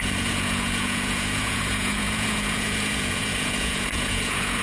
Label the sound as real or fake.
fake